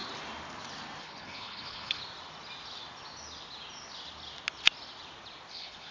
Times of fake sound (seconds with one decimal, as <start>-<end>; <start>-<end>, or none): 1.0-2.0; 5.5-5.9